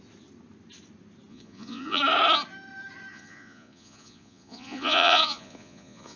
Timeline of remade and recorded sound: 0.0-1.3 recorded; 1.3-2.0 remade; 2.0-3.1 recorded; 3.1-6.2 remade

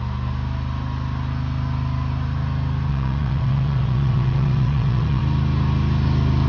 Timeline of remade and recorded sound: 0.0-2.9 recorded; 2.9-5.2 remade; 5.2-6.5 recorded

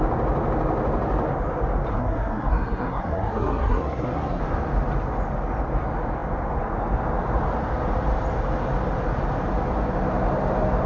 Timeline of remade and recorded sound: 0.0-1.9 recorded; 1.9-4.4 remade; 4.4-10.9 recorded

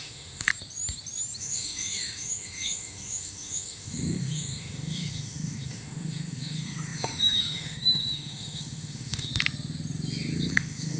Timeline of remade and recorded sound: 0.0-0.5 remade; 0.5-1.4 recorded; 1.4-9.3 remade; 9.3-10.5 recorded; 10.5-11.0 remade

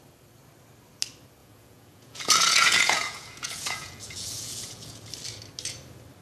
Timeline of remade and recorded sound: 0.0-1.4 recorded; 1.4-5.1 remade; 5.1-6.2 recorded